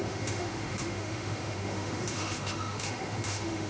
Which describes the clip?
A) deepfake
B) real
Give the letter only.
A